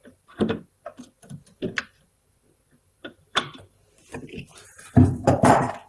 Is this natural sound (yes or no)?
no